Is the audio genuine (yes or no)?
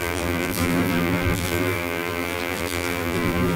no